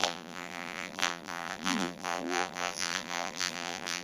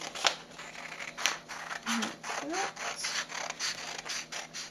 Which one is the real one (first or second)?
second